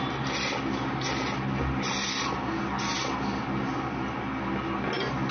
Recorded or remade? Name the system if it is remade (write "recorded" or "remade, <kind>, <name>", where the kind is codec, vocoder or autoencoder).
recorded